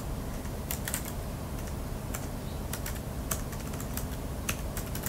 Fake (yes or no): no